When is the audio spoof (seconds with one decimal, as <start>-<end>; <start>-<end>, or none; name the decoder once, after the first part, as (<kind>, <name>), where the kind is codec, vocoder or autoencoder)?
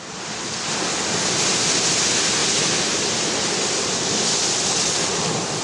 none